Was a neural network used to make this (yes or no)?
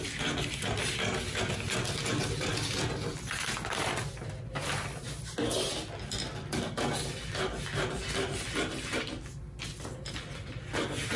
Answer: no